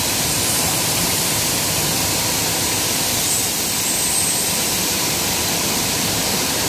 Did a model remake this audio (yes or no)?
yes